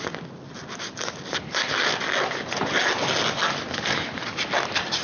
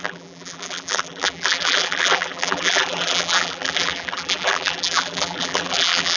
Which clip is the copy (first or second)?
second